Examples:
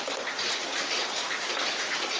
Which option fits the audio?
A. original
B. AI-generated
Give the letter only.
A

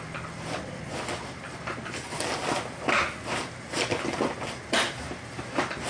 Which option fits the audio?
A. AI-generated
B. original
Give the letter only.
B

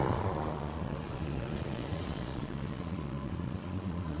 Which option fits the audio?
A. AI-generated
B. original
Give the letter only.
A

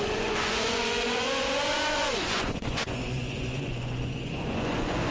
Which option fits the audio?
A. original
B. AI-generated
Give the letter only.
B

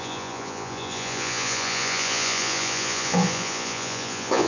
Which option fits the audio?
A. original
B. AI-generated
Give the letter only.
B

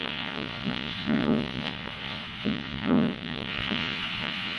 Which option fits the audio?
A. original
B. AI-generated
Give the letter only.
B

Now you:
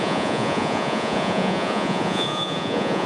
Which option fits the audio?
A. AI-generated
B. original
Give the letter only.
A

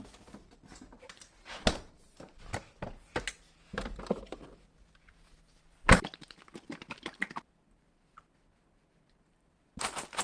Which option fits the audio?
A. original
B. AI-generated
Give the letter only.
A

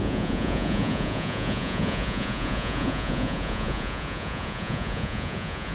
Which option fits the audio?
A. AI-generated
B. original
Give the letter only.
A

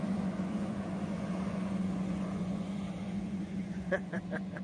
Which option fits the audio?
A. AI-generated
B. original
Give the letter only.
A